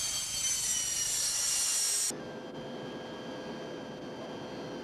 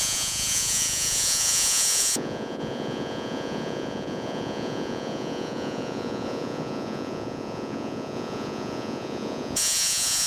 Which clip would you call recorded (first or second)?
first